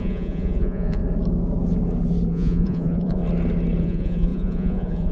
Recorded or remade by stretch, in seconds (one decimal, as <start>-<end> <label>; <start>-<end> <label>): 0.0-1.0 remade; 1.0-2.3 recorded; 2.3-3.2 remade; 3.2-3.8 recorded; 3.8-5.1 remade